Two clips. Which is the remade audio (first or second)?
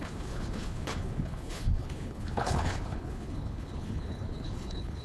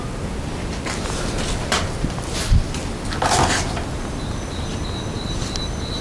first